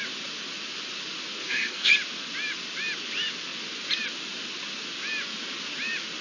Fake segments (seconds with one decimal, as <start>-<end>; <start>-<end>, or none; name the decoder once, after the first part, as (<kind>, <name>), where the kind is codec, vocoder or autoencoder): 1.4-1.9 (codec, SNAC)